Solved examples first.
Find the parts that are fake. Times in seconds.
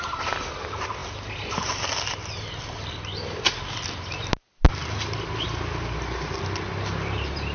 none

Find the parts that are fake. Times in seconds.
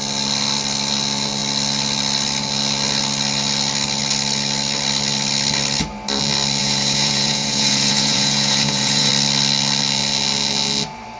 6.6-9.1 (vocoder, Vocos)